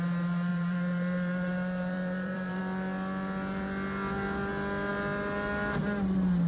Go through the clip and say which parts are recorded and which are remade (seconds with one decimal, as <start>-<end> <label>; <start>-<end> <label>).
0.0-0.5 recorded; 0.5-2.6 remade; 2.6-6.5 recorded